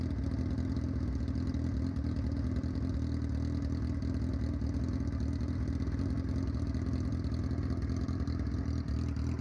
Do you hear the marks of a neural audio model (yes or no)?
no